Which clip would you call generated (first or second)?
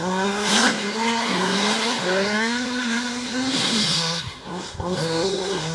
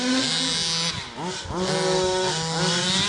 first